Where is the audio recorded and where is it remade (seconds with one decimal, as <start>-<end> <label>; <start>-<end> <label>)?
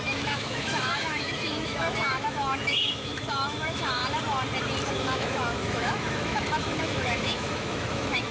0.0-4.0 remade; 4.0-4.9 recorded; 4.9-8.3 remade